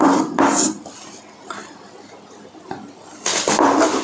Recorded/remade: recorded